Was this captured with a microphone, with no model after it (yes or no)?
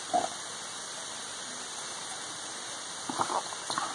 yes